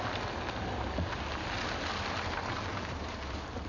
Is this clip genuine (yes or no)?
yes